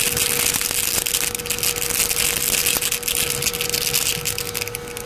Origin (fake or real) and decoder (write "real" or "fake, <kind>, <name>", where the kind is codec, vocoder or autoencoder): real